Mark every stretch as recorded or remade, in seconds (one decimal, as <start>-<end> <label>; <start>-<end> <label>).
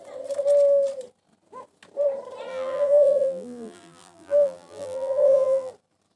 0.0-2.5 recorded; 2.5-5.7 remade; 5.7-6.2 recorded